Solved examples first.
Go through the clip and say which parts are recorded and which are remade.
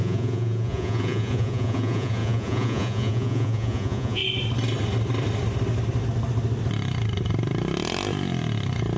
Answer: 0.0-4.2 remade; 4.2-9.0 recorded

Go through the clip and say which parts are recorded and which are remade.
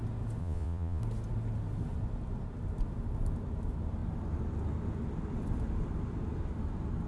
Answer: 0.0-0.4 recorded; 0.4-1.0 remade; 1.0-7.1 recorded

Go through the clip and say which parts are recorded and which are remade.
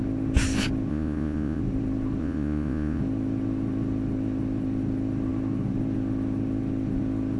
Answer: 0.0-0.9 recorded; 0.9-1.6 remade; 1.6-2.2 recorded; 2.2-3.0 remade; 3.0-7.4 recorded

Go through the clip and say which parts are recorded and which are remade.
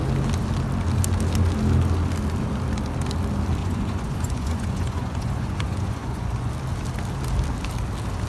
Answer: 0.0-3.6 recorded; 3.6-6.5 remade; 6.5-8.3 recorded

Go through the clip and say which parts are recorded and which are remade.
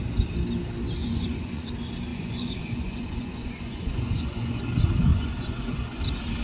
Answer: 0.0-1.0 recorded; 1.0-1.7 remade; 1.7-2.1 recorded; 2.1-4.6 remade; 4.6-5.1 recorded; 5.1-6.0 remade; 6.0-6.4 recorded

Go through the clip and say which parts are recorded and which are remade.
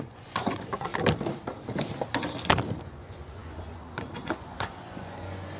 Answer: 0.0-0.9 remade; 0.9-2.8 recorded; 2.8-5.6 remade